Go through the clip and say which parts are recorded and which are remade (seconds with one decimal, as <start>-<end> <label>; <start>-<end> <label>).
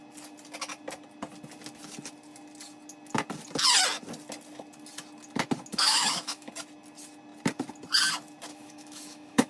0.0-5.7 recorded; 5.7-6.5 remade; 6.5-8.5 recorded; 8.5-9.5 remade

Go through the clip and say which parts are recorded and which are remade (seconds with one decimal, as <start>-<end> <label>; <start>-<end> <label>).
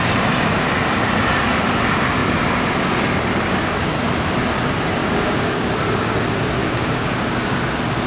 0.0-5.0 recorded; 5.0-5.7 remade; 5.7-6.6 recorded; 6.6-7.6 remade; 7.6-8.1 recorded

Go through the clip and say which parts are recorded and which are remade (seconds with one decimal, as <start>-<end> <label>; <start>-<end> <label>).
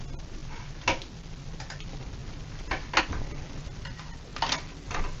0.0-5.2 recorded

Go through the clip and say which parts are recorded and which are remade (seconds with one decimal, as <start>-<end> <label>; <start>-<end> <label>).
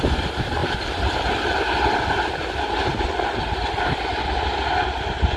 0.0-5.4 recorded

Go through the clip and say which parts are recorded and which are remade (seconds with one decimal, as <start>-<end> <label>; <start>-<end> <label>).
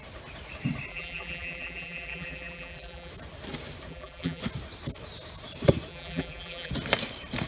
0.0-0.9 recorded; 0.9-3.1 remade; 3.1-3.9 recorded; 3.9-4.4 remade; 4.4-5.9 recorded; 5.9-6.7 remade; 6.7-7.5 recorded